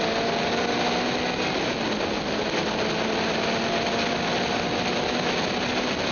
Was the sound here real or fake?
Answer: real